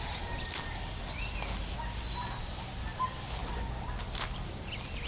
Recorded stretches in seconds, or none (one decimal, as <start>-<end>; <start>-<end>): 0.0-5.1